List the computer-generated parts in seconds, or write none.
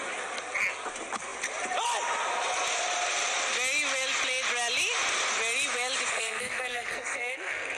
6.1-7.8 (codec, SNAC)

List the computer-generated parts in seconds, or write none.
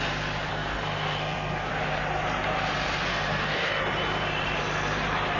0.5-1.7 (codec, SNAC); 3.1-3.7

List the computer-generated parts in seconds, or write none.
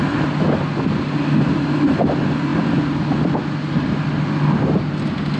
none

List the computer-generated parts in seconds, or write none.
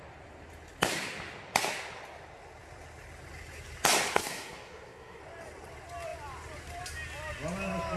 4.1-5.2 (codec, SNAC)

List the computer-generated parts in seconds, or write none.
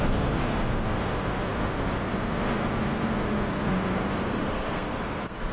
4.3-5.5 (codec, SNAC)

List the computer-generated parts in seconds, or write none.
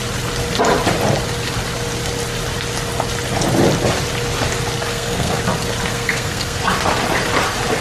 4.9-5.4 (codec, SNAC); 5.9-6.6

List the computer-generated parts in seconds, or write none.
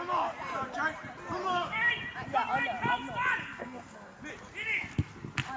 1.4-1.9 (codec, SNAC); 3.4-4.2